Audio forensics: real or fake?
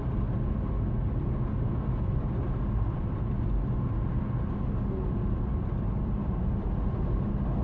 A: real